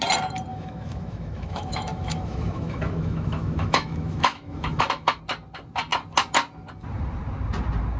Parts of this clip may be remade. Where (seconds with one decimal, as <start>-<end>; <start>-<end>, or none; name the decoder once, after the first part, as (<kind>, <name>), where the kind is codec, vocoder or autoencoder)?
0.5-5.2 (autoencoder, DAC-VAE)